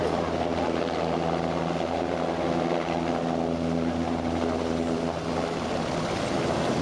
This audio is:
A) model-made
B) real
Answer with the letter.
B